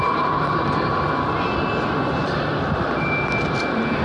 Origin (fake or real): real